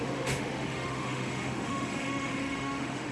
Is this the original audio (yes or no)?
no